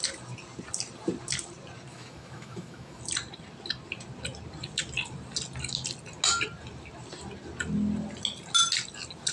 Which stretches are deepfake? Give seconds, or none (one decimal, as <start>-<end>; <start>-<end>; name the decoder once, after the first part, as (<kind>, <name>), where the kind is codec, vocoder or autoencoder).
1.9-3.0 (autoencoder, DAC-VAE)